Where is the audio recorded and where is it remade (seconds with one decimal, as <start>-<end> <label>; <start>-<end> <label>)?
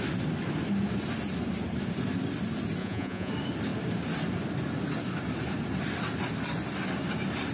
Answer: 0.0-2.8 recorded; 2.8-3.3 remade; 3.3-7.5 recorded